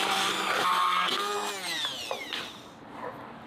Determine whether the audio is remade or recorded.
recorded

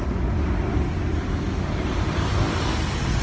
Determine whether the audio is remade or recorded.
recorded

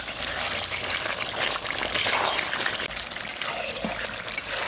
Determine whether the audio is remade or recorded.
recorded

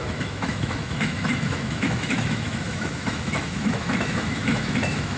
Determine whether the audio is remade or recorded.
remade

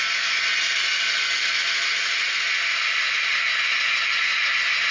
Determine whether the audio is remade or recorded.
recorded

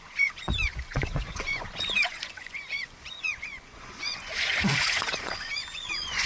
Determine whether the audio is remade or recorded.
remade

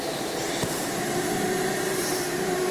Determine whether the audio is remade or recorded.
remade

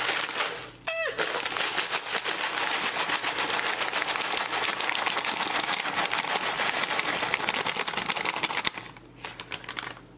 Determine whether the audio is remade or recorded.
recorded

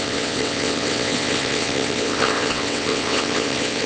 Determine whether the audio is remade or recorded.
remade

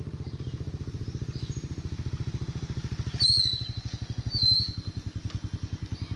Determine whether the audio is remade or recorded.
recorded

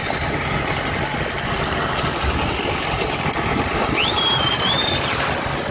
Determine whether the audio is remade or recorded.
recorded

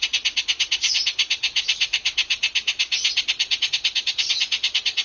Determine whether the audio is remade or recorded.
remade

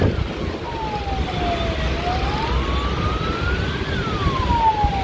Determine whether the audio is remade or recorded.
recorded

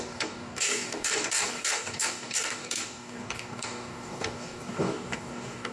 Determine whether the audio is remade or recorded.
remade